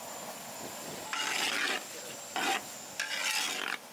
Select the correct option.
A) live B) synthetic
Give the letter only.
A